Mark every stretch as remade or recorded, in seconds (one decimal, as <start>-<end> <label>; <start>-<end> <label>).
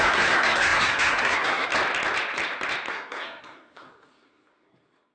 0.0-1.7 remade; 1.7-2.9 recorded; 2.9-5.1 remade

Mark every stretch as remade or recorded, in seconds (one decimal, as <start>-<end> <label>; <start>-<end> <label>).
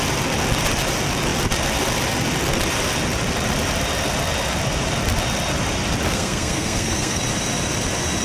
0.0-6.1 recorded; 6.1-7.2 remade; 7.2-8.2 recorded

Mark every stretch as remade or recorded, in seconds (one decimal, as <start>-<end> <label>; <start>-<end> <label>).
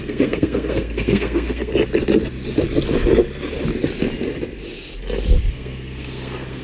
0.0-1.7 remade; 1.7-5.5 recorded; 5.5-6.6 remade